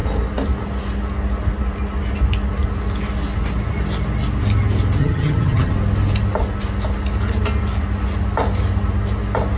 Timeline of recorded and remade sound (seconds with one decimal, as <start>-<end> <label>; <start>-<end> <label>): 0.0-5.0 recorded; 5.0-5.7 remade; 5.7-9.6 recorded